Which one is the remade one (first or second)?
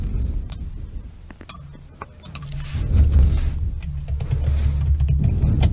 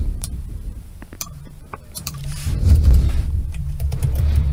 second